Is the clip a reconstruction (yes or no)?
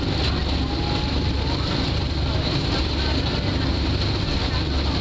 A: no